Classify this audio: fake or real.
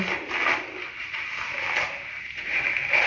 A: real